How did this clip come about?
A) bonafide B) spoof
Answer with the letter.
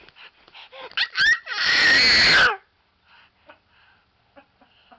A